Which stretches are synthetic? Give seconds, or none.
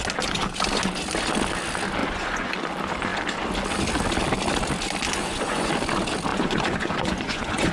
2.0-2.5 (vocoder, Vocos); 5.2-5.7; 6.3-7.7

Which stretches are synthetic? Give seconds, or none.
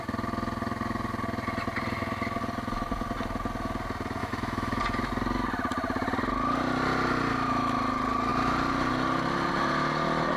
4.2-4.8 (autoencoder, DAC-VAE); 7.3-7.8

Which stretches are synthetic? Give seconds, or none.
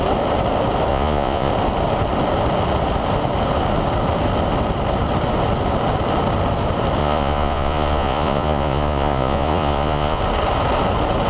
0.9-1.5 (vocoder, Vocos); 7.0-10.2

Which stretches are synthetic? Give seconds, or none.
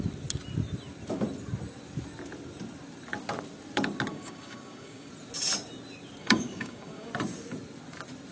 4.1-5.1 (codec, DAC); 6.2-7.1